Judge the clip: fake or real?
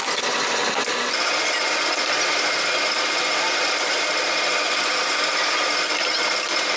real